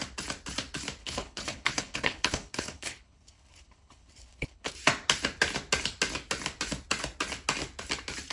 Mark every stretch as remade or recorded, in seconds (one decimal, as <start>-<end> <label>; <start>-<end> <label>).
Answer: 0.0-1.0 recorded; 1.0-4.7 remade; 4.7-8.3 recorded